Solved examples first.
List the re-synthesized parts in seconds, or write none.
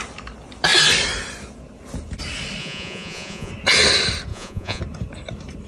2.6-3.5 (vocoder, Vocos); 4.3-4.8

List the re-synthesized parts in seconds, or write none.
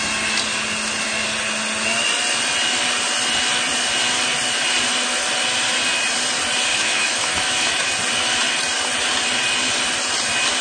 6.7-7.9 (autoencoder, DAC-VAE)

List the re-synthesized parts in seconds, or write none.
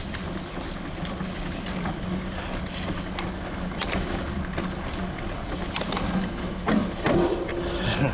none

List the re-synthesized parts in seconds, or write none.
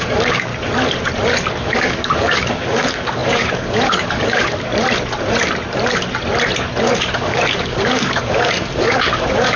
0.0-0.5 (codec, DAC); 1.5-4.7; 6.8-9.6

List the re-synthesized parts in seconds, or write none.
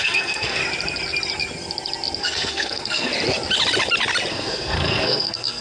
0.0-0.6 (codec, SNAC); 2.2-3.1; 4.3-5.6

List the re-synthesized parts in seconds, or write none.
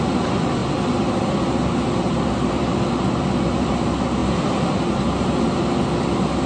none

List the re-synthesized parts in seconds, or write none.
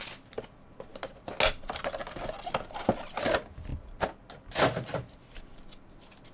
none